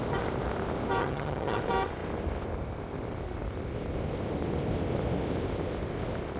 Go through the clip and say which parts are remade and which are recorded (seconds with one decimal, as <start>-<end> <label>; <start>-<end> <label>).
0.0-1.0 recorded; 1.0-1.6 remade; 1.6-6.4 recorded